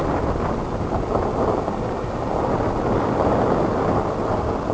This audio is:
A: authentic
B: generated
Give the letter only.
A